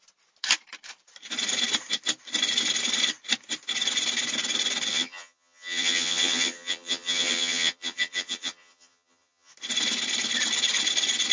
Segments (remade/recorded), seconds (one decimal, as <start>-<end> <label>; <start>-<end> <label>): 0.0-4.9 recorded; 4.9-9.5 remade; 9.5-11.3 recorded